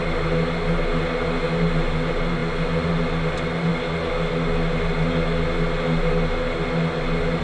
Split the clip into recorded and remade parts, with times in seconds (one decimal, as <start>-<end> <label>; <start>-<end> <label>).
0.0-7.4 recorded